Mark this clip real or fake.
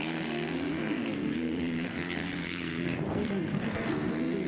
fake